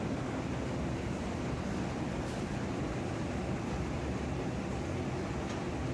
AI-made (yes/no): no